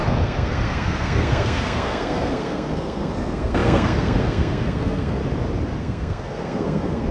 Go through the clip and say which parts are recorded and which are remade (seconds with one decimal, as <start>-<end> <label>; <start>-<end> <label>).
0.0-5.2 remade; 5.2-5.8 recorded; 5.8-7.1 remade